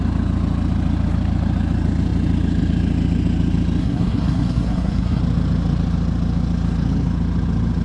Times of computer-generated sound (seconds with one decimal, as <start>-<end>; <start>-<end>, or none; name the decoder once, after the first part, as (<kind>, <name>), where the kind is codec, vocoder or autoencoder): 3.8-5.2 (codec, SNAC)